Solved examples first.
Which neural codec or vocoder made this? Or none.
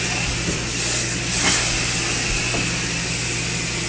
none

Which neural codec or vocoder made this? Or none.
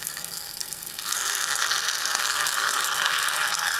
codec, SNAC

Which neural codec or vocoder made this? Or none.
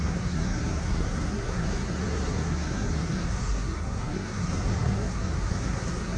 codec, SNAC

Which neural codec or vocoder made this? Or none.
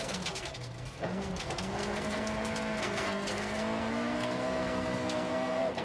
codec, SNAC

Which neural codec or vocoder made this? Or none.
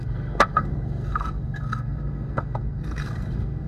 codec, SNAC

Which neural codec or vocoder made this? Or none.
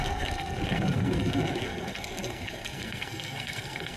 codec, SNAC